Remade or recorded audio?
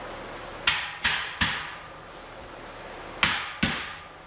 recorded